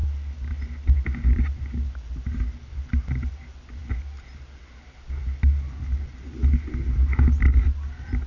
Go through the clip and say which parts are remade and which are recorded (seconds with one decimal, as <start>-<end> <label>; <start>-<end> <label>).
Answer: 0.0-8.3 recorded